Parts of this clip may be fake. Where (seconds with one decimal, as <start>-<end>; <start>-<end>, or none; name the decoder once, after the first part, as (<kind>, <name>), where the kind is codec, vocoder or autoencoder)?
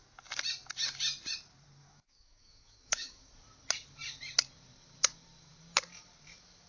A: 1.8-3.3 (autoencoder, DAC-VAE)